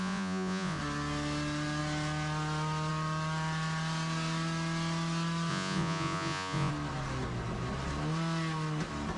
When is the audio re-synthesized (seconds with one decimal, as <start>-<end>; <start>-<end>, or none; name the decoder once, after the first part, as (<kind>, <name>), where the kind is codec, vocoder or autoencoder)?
0.0-0.8 (vocoder, Vocos); 5.5-6.7